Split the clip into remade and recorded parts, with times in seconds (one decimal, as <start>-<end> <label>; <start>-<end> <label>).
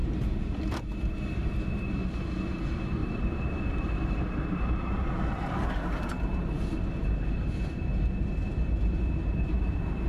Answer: 0.0-0.7 remade; 0.7-3.0 recorded; 3.0-6.0 remade; 6.0-10.1 recorded